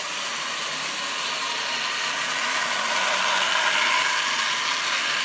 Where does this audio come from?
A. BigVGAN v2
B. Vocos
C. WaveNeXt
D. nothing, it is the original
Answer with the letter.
D